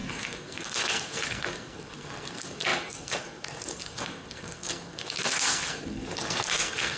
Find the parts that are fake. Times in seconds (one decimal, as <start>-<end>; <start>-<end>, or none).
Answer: 0.0-7.0